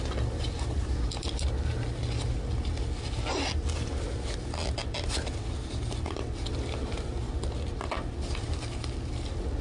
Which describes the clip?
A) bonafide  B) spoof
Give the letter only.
A